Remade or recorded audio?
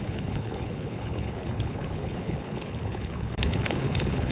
remade